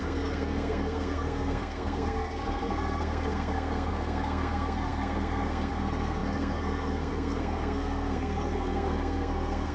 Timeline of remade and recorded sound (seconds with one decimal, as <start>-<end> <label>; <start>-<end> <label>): 0.0-9.7 remade

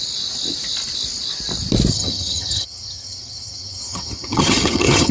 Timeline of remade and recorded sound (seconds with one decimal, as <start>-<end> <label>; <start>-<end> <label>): 0.0-1.9 recorded; 1.9-5.1 remade

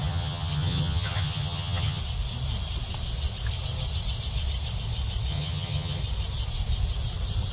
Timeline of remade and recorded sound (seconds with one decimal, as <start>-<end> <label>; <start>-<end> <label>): 0.0-2.0 remade; 2.0-5.3 recorded; 5.3-6.0 remade; 6.0-7.5 recorded

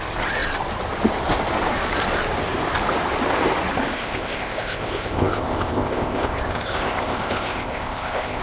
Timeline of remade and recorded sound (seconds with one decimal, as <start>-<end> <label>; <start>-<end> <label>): 0.0-3.9 recorded; 3.9-8.4 remade

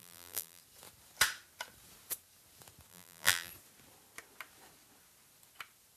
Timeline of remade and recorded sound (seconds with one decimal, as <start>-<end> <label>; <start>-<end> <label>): 0.0-0.6 remade; 0.6-2.9 recorded; 2.9-3.5 remade; 3.5-6.0 recorded

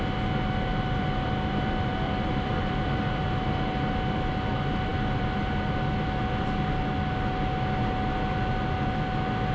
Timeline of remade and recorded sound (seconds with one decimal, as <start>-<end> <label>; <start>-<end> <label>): 0.0-0.7 recorded; 0.7-3.2 remade; 3.2-4.9 recorded; 4.9-6.5 remade; 6.5-9.5 recorded

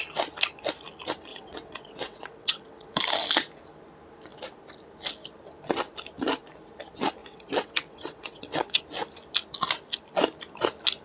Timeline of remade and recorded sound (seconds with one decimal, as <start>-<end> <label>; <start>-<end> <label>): 0.0-1.3 recorded; 1.3-3.0 remade; 3.0-7.2 recorded; 7.2-8.8 remade; 8.8-11.0 recorded

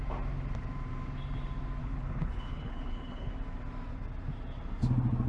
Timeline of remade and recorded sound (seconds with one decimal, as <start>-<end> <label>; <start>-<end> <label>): 0.0-1.8 recorded; 1.8-3.3 remade; 3.3-5.3 recorded